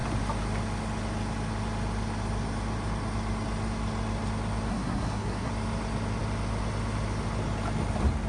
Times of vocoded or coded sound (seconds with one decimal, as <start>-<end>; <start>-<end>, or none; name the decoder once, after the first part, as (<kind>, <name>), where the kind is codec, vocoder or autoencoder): 4.7-5.5 (codec, SNAC)